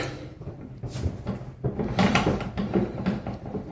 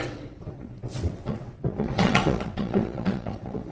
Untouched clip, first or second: first